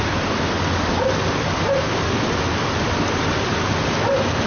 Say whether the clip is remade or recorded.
recorded